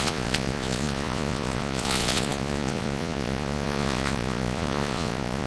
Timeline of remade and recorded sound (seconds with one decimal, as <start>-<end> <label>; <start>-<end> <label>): 0.0-5.5 remade